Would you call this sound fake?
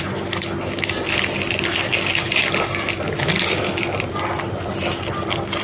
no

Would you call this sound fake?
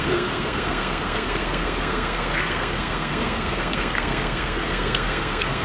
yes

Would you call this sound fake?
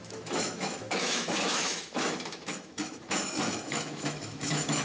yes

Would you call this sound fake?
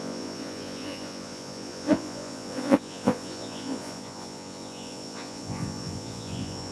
yes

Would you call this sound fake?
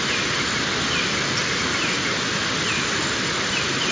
no